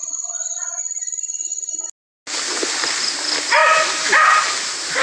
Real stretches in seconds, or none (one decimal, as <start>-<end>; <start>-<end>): 0.0-5.0